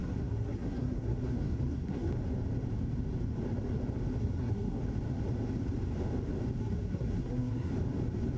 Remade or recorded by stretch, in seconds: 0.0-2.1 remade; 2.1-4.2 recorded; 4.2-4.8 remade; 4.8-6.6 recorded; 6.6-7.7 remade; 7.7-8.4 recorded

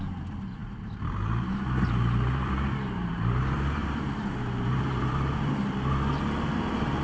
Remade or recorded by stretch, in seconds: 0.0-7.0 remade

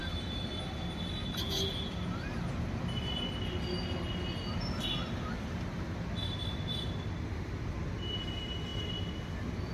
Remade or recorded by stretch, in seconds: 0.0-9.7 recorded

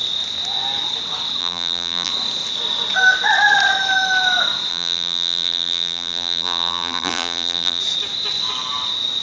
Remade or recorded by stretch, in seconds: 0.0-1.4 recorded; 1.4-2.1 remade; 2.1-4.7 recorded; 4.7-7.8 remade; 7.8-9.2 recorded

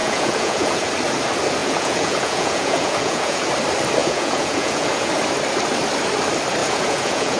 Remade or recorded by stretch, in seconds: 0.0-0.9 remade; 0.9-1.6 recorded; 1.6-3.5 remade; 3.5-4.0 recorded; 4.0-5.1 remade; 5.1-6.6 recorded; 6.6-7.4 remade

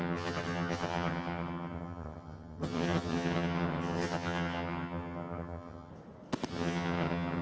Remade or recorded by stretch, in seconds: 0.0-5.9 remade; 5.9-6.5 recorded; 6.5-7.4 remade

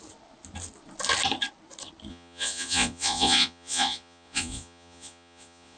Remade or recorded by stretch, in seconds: 0.0-2.1 recorded; 2.1-5.8 remade